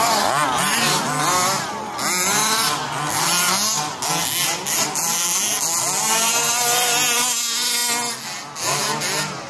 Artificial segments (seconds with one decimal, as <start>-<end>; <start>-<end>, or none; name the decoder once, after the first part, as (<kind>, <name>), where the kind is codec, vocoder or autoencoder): none